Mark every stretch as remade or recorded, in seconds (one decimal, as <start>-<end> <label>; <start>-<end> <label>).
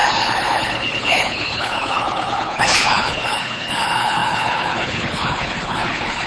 0.0-6.3 remade